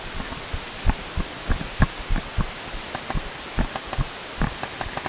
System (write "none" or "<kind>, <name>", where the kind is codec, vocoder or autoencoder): none